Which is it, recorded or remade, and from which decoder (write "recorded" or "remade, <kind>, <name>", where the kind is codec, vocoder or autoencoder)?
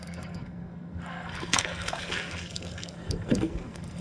remade, codec, SNAC